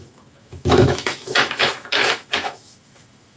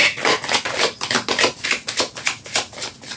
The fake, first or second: first